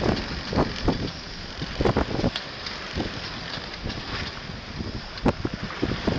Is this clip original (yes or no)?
yes